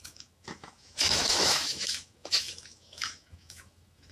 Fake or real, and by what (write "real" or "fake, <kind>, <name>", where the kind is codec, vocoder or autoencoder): fake, autoencoder, DAC-VAE